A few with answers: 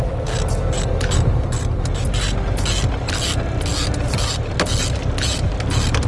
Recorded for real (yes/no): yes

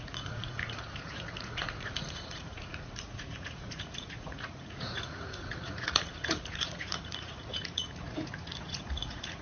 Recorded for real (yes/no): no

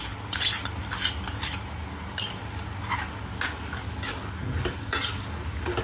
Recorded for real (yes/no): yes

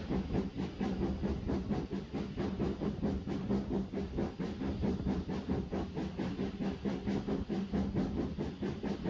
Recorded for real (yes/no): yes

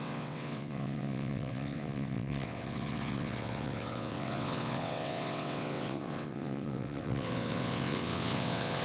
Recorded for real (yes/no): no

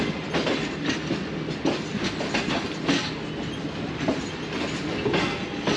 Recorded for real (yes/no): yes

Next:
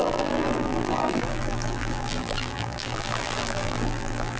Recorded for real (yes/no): no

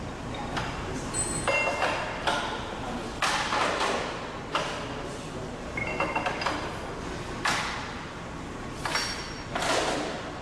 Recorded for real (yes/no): yes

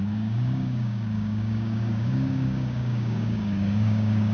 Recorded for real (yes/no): no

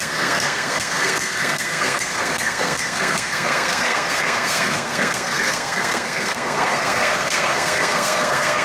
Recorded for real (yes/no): no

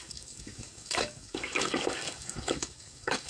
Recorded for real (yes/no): no